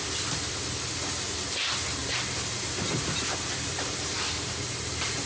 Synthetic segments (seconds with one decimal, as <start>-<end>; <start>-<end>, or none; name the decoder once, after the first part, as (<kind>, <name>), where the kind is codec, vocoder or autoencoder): 2.0-5.3 (vocoder, BigVGAN v2)